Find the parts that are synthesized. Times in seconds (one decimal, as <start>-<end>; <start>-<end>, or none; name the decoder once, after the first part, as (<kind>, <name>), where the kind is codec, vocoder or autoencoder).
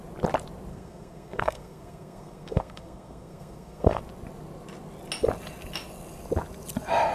0.7-4.0 (codec, SNAC)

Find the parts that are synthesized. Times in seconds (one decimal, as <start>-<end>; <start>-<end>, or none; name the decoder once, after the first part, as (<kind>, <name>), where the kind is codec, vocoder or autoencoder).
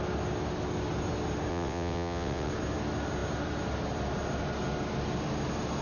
1.5-2.5 (vocoder, WaveNeXt)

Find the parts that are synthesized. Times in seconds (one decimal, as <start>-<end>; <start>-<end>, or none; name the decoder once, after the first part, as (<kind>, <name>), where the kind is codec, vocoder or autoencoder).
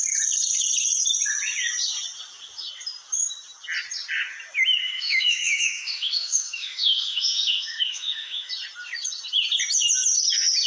4.8-8.5 (autoencoder, DAC-VAE)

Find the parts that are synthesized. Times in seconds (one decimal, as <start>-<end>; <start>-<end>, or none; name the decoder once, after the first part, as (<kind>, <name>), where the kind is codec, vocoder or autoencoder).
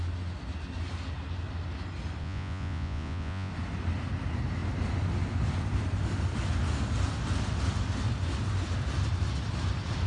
2.2-3.5 (vocoder, Vocos)